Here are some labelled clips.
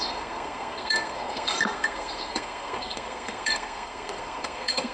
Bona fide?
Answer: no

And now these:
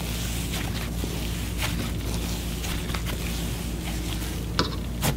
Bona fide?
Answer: yes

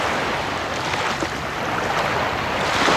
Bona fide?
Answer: yes